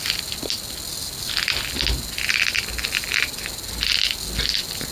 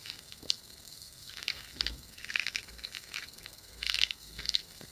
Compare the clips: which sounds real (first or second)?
first